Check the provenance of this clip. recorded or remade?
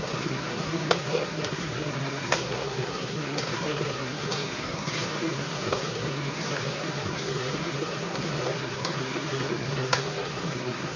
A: remade